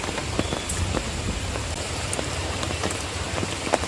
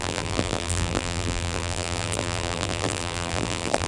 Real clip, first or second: first